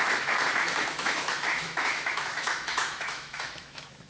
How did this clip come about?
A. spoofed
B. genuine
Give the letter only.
A